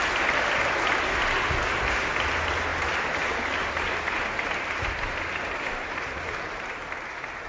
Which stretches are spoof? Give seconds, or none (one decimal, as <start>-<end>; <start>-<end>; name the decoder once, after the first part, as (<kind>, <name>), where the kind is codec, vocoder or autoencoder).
2.7-7.5 (vocoder, BigVGAN v2)